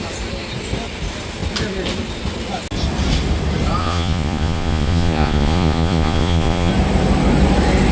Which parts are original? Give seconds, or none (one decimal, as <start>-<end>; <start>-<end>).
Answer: 0.0-3.8; 6.7-7.9